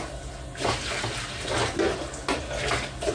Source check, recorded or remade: recorded